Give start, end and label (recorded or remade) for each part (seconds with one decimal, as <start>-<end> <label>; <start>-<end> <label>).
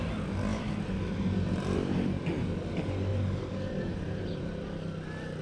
0.0-0.5 recorded; 0.5-2.2 remade; 2.2-3.1 recorded; 3.1-4.5 remade; 4.5-5.4 recorded